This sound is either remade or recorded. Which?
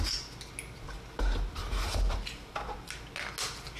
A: recorded